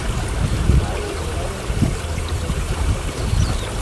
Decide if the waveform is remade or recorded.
recorded